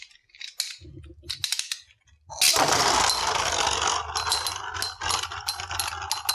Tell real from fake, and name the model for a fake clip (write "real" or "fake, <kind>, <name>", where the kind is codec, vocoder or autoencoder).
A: real